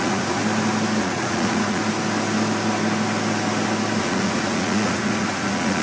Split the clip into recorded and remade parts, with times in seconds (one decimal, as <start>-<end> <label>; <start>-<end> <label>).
0.0-0.4 remade; 0.4-1.0 recorded; 1.0-1.8 remade; 1.8-4.0 recorded; 4.0-5.8 remade

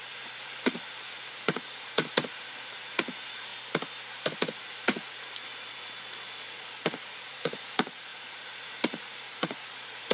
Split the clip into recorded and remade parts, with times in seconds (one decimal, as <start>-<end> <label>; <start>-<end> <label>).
0.0-3.5 remade; 3.5-4.4 recorded; 4.4-10.1 remade

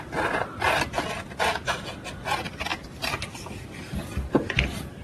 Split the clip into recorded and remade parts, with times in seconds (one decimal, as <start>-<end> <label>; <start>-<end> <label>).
0.0-5.0 recorded

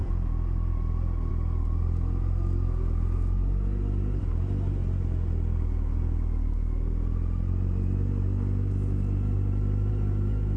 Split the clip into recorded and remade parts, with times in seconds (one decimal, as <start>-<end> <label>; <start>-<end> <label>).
0.0-10.6 recorded